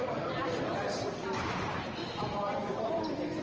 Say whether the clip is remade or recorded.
remade